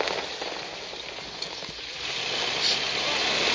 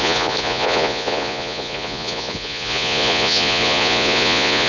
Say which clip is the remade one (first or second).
second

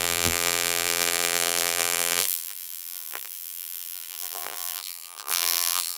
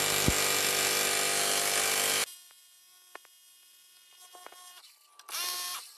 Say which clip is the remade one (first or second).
first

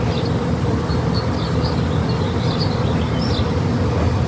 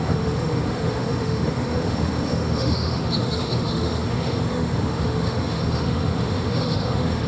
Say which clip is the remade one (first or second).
second